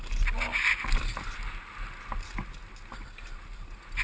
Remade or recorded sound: recorded